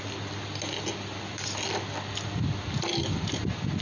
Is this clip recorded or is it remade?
recorded